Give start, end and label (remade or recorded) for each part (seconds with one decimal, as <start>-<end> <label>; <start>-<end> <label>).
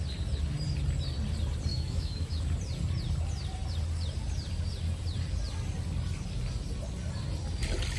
0.0-1.7 recorded; 1.7-2.4 remade; 2.4-8.0 recorded